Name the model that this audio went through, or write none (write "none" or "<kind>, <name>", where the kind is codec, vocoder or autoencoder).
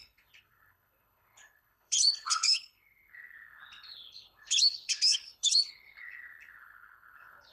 codec, HILCodec